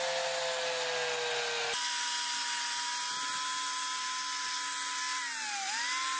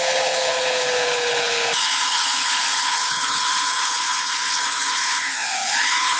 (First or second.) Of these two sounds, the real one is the first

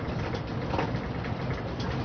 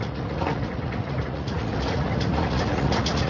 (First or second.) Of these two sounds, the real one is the first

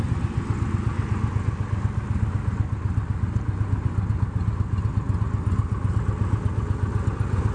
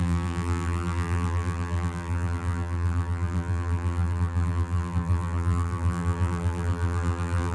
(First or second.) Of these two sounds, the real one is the first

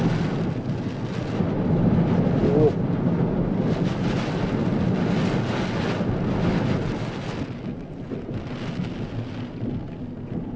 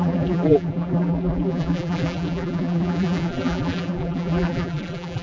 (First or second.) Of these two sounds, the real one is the first